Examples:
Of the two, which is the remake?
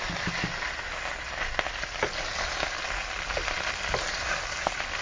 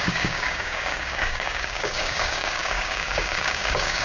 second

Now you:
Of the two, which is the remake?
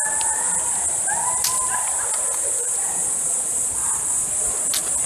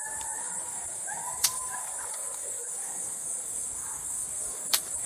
second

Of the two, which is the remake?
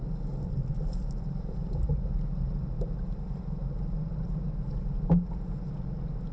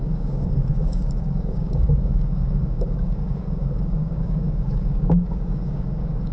second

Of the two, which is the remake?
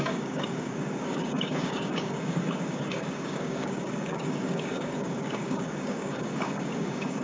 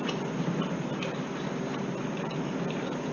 first